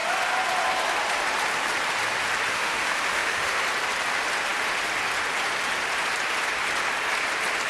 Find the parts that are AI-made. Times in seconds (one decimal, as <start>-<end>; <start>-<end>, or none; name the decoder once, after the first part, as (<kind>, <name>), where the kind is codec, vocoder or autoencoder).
2.5-3.6 (autoencoder, DAC-VAE)